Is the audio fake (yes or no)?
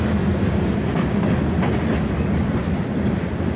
no